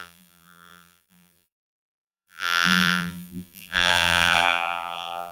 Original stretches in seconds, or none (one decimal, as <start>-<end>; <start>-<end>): none